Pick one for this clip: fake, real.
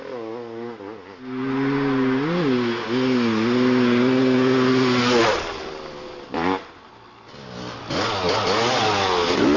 real